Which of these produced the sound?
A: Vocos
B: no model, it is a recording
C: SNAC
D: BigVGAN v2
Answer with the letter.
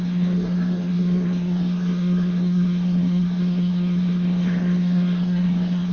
C